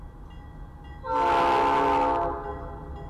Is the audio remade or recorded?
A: recorded